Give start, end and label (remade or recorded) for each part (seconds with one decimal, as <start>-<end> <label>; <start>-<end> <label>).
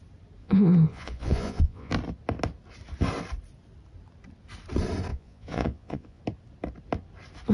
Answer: 0.0-0.4 recorded; 0.4-1.9 remade; 1.9-5.1 recorded; 5.1-6.2 remade; 6.2-7.5 recorded